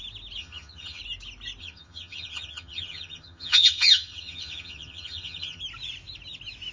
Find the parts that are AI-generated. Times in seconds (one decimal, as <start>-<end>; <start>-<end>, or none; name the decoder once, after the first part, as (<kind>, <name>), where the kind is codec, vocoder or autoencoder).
0.4-1.0 (vocoder, HiFi-GAN); 1.6-5.6

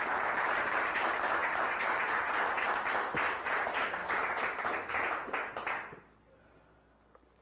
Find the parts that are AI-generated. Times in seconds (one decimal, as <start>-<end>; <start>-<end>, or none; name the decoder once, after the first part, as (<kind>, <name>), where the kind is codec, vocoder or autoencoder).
none

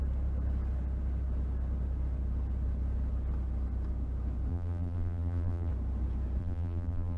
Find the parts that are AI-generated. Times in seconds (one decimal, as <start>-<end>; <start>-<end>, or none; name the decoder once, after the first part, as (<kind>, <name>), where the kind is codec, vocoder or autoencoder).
4.5-5.7 (vocoder, BigVGAN v2); 6.4-7.2

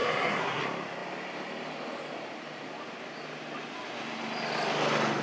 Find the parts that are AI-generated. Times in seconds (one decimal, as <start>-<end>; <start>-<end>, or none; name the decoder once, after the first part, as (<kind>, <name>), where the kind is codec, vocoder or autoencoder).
0.0-0.6 (codec, SNAC)

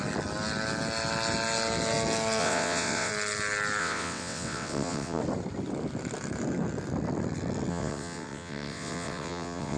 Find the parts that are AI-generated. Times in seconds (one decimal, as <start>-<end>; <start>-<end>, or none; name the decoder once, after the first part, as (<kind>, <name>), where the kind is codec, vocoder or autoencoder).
2.4-3.1 (vocoder, WaveNeXt); 3.8-5.2; 7.7-9.8

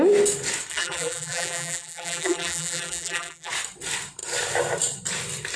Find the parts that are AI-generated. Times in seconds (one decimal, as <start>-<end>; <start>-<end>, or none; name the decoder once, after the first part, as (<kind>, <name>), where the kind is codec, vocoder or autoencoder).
0.7-3.5 (vocoder, BigVGAN v2)

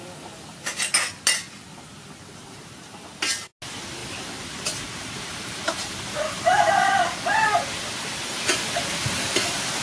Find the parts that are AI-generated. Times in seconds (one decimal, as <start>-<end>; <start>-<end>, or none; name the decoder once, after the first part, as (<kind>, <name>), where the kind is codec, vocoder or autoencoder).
1.7-3.2 (vocoder, BigVGAN v2); 4.0-6.7

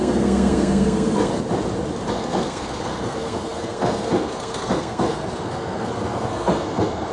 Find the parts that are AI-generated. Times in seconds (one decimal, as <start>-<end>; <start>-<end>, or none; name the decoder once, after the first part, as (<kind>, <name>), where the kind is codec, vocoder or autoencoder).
0.0-1.3 (codec, SNAC); 2.1-7.1